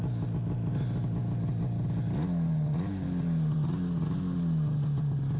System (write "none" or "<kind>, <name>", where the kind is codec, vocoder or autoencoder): none